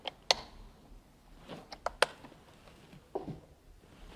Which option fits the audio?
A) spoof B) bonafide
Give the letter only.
B